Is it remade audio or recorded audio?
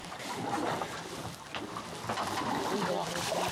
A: recorded